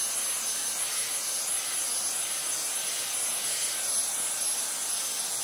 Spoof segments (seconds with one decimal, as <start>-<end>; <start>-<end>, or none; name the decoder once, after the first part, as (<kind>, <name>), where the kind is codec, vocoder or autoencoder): none